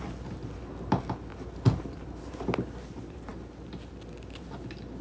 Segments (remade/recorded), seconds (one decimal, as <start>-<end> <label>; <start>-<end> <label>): 0.0-5.0 recorded